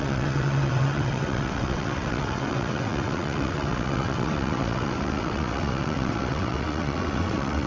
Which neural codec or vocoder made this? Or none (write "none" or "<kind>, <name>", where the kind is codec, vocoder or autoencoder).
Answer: vocoder, WaveNeXt